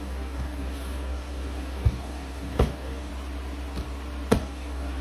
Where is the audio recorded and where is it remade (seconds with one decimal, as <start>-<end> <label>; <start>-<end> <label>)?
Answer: 0.0-3.1 remade; 3.1-4.4 recorded; 4.4-5.0 remade